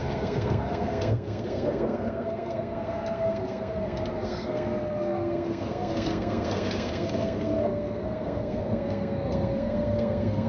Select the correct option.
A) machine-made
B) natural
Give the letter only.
A